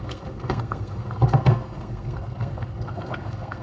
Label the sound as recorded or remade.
remade